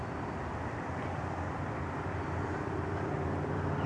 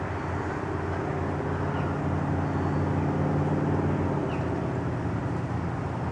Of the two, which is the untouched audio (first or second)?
second